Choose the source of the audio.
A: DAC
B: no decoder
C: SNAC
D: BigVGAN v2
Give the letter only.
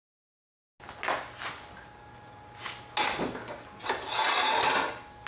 B